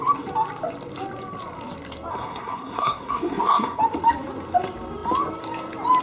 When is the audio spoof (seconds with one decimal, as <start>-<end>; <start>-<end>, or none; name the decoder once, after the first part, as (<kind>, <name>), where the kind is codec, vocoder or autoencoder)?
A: 2.1-3.8 (codec, SNAC)